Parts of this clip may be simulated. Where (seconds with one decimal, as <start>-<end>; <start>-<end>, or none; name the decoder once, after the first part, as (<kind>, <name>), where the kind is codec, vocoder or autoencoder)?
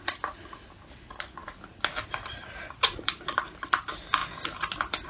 none